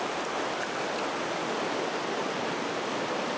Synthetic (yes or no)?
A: no